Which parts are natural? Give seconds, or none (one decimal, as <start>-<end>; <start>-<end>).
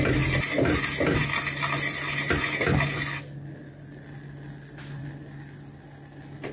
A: 0.0-6.5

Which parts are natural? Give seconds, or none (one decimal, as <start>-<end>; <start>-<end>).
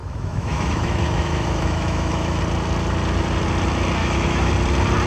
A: 2.4-4.0; 4.5-5.1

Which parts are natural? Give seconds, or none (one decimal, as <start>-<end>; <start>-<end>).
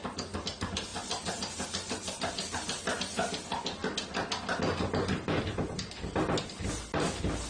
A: 0.0-7.5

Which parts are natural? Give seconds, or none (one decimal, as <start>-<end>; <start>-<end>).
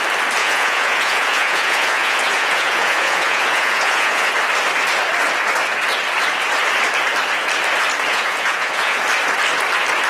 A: 0.0-0.4; 4.3-8.1; 9.0-10.1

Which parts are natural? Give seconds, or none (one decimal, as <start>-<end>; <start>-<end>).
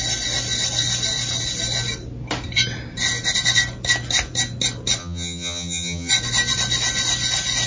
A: 0.0-5.0; 6.1-7.7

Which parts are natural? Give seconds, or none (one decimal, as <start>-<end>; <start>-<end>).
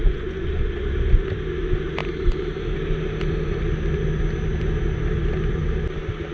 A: 0.7-6.3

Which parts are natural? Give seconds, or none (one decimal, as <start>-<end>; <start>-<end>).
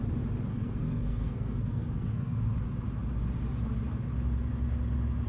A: 0.0-0.5; 2.4-5.3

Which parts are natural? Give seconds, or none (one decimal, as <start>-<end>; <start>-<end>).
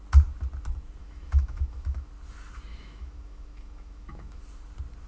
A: 0.0-1.0; 2.1-2.7; 4.4-5.1